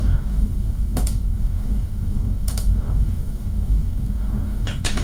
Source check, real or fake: fake